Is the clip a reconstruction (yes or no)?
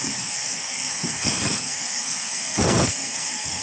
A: yes